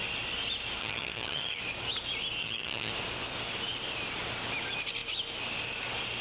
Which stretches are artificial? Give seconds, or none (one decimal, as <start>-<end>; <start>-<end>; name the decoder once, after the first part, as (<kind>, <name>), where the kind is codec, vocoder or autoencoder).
0.8-1.6 (vocoder, HiFi-GAN); 2.4-2.9